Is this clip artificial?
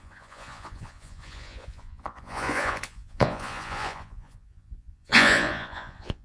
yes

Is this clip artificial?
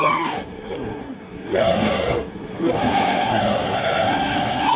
yes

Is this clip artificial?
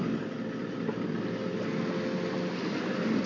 no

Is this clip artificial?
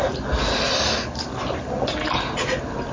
no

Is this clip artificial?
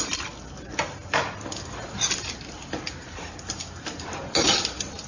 no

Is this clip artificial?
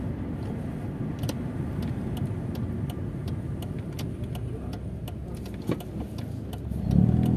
no